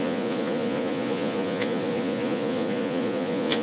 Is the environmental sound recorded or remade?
remade